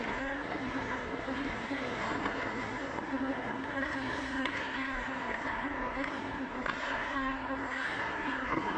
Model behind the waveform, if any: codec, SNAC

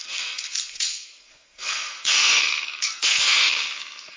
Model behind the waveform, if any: codec, SNAC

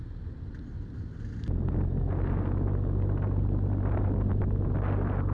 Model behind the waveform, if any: none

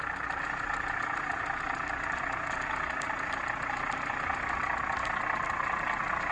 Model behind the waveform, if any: none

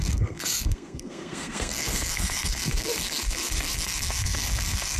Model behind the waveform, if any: codec, SNAC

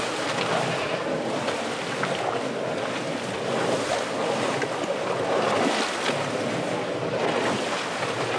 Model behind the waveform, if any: none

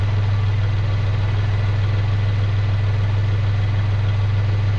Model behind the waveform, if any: none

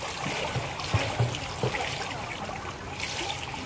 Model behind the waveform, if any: none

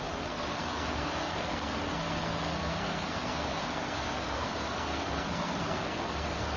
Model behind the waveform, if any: codec, SNAC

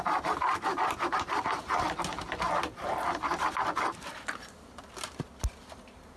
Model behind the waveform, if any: none